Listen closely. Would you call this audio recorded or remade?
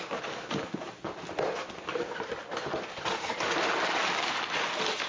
recorded